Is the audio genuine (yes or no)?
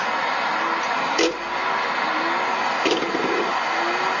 yes